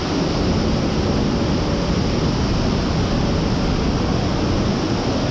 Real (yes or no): yes